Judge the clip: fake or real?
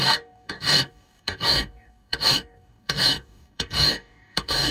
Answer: fake